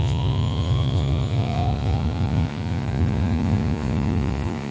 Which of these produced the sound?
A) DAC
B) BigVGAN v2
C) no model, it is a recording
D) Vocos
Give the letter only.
D